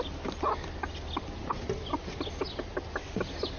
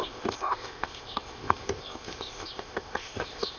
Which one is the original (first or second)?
first